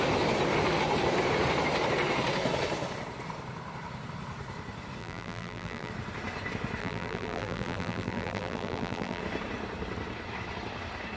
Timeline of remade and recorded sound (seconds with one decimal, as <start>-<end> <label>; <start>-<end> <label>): 0.0-5.0 recorded; 5.0-5.9 remade; 5.9-6.8 recorded; 6.8-9.2 remade; 9.2-11.2 recorded